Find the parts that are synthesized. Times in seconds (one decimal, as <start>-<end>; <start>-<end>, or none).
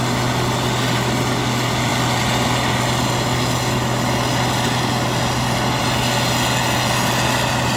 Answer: none